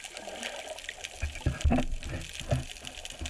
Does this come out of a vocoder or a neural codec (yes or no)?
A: no